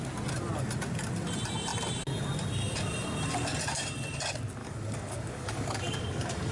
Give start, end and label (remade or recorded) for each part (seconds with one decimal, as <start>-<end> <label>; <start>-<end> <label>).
0.0-4.6 recorded; 4.6-6.5 remade